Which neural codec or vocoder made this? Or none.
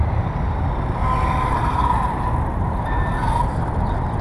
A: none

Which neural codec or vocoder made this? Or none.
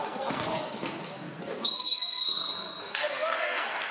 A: codec, SNAC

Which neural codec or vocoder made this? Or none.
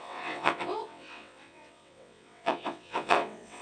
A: vocoder, WaveNeXt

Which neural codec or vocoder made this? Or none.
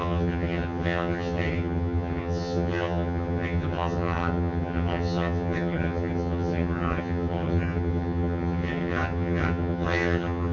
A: vocoder, HiFi-GAN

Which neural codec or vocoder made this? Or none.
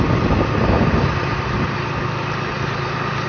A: none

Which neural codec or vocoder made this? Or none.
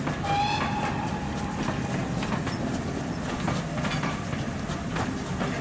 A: none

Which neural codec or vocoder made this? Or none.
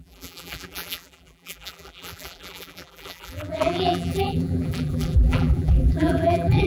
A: vocoder, BigVGAN v2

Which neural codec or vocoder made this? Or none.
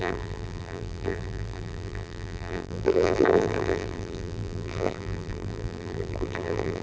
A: vocoder, BigVGAN v2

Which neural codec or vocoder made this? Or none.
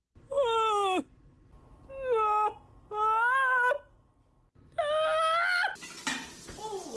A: none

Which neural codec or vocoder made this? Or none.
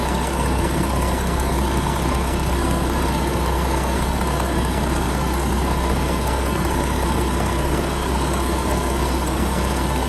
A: codec, SNAC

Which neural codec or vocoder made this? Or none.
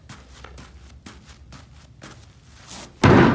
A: none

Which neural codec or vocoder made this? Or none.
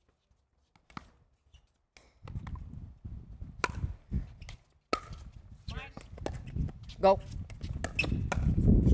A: none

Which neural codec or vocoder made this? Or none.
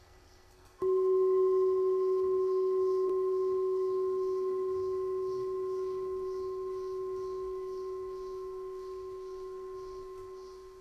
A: codec, SNAC